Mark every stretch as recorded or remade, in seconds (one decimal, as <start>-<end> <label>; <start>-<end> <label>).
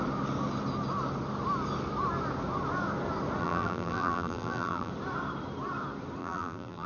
0.0-3.4 recorded; 3.4-4.9 remade; 4.9-6.2 recorded; 6.2-6.9 remade